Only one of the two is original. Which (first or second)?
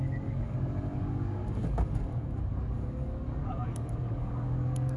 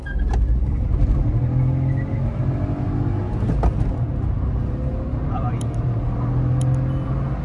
second